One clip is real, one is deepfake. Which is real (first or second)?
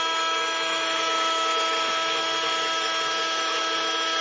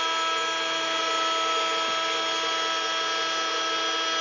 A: second